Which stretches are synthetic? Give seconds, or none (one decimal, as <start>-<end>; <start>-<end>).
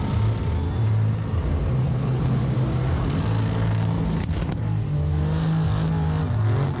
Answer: 1.8-2.4